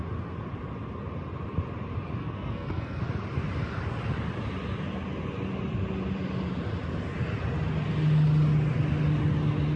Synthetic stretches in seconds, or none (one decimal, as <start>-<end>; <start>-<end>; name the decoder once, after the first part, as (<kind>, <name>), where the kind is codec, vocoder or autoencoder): 2.2-3.0 (codec, SNAC)